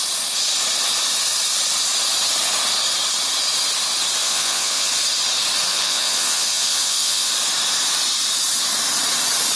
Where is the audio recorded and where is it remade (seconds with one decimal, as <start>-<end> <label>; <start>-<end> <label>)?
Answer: 0.0-4.2 recorded; 4.2-4.9 remade; 4.9-5.7 recorded; 5.7-7.3 remade; 7.3-9.6 recorded